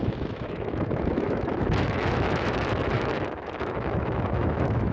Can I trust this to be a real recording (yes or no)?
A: no